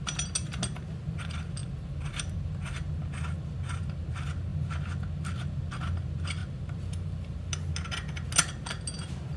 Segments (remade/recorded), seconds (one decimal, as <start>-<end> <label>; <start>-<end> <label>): 0.0-9.4 recorded